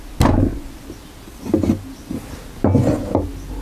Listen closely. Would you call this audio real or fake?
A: real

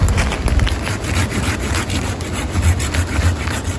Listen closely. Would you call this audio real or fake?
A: real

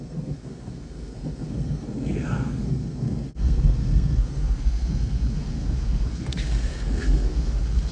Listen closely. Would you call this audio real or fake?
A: fake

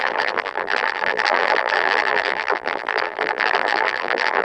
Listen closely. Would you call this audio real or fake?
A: fake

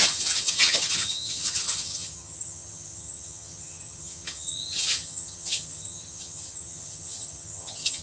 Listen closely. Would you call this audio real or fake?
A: fake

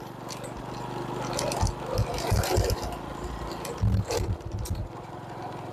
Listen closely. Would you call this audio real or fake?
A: real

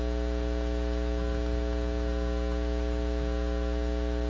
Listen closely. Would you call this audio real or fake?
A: real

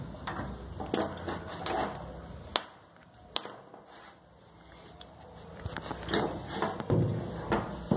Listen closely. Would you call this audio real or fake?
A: real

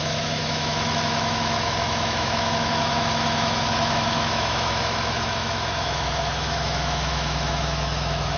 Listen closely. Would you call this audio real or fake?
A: fake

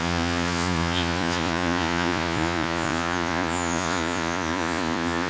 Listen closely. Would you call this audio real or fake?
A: fake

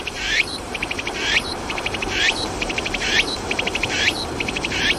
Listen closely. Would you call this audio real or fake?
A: fake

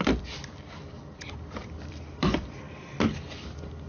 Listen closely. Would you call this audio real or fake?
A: fake